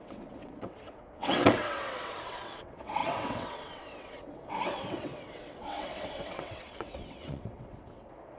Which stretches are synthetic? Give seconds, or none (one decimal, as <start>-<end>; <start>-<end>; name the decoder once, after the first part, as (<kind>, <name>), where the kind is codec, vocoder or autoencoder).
0.0-8.4 (vocoder, WaveNeXt)